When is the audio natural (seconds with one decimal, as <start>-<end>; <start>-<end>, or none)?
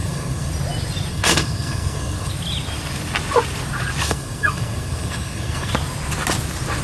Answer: 0.5-1.1; 2.3-4.0; 5.7-6.8